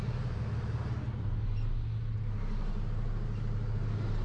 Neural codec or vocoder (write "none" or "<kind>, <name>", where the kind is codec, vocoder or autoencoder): none